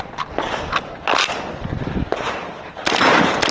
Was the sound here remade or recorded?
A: recorded